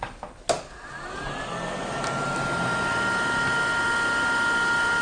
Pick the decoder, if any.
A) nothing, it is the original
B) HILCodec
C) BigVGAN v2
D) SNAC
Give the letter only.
A